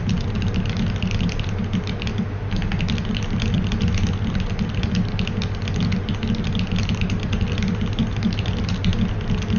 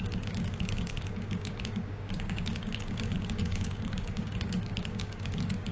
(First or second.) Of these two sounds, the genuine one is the first